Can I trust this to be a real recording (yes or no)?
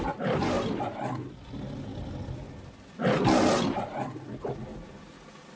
yes